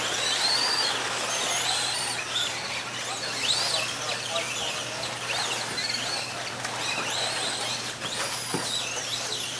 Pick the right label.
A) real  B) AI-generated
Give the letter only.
A